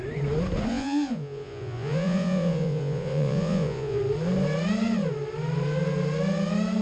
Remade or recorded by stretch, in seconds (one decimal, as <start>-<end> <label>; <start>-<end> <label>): 0.0-0.7 recorded; 0.7-4.0 remade; 4.0-6.8 recorded